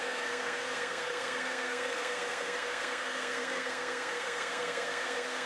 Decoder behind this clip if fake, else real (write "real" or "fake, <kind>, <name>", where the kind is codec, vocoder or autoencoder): fake, codec, SNAC